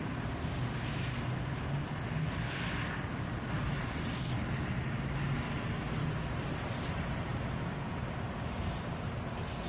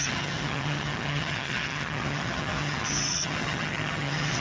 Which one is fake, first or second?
second